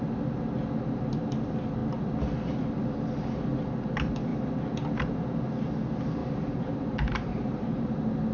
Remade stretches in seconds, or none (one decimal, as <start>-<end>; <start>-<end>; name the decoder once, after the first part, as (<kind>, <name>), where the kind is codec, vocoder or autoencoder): 6.2-7.9 (vocoder, BigVGAN v2)